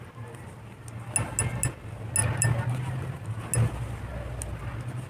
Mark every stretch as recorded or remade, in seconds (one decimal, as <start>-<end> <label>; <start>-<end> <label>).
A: 0.0-5.1 recorded